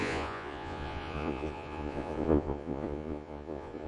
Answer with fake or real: fake